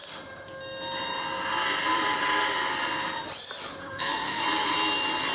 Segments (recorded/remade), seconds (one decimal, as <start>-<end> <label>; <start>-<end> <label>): 0.0-3.8 recorded; 3.8-4.4 remade; 4.4-5.3 recorded